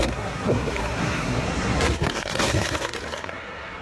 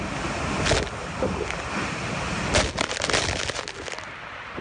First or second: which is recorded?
second